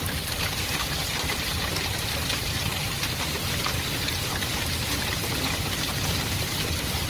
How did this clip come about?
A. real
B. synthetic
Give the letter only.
B